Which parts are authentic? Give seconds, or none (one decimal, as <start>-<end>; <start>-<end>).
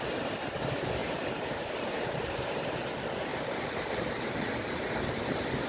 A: 0.0-1.0; 2.4-3.3; 4.4-5.7